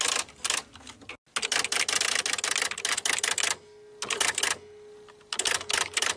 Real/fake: real